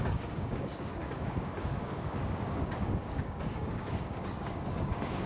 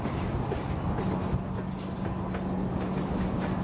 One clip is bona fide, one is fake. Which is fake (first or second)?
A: first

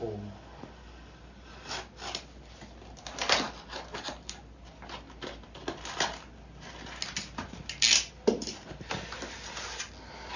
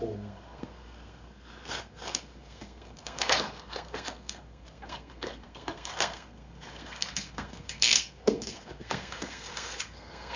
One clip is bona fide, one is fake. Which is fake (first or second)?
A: second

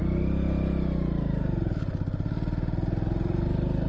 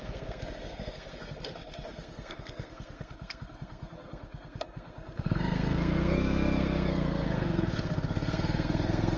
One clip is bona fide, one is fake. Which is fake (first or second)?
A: second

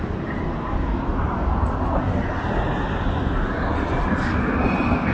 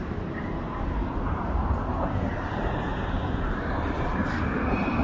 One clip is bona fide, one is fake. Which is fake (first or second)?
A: second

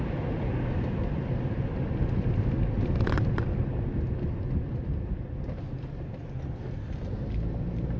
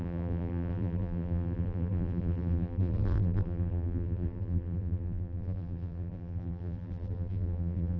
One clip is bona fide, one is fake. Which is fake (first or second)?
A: second